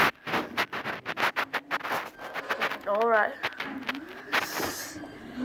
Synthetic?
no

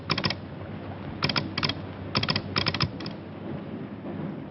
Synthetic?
no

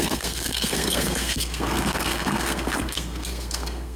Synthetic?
yes